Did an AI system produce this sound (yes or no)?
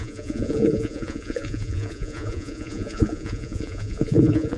yes